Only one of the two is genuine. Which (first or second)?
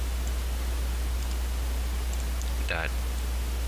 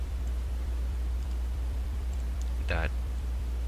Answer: first